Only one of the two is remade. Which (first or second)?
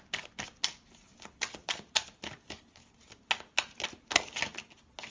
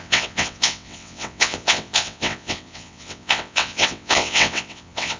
second